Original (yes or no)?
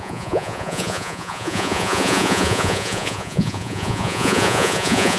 no